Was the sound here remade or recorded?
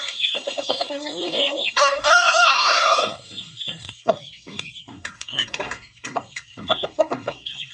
remade